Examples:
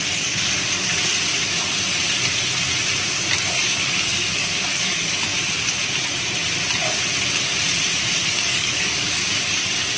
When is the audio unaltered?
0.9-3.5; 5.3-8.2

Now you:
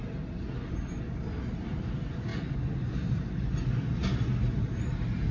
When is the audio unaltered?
0.0-5.3

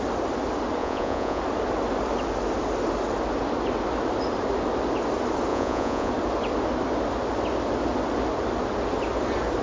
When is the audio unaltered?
0.0-0.8; 1.4-5.5; 6.1-9.6

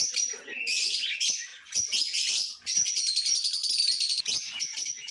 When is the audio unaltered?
0.0-1.5; 2.9-5.1

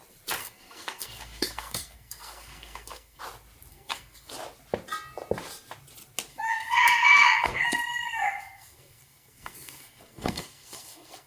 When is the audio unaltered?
0.0-0.4; 3.2-3.7; 4.3-6.3